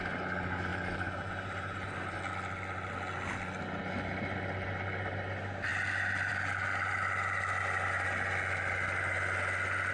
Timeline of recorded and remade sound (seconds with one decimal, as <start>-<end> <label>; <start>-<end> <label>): 0.0-0.7 recorded; 0.7-2.2 remade; 2.2-9.9 recorded